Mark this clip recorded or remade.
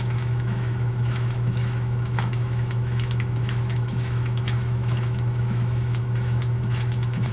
remade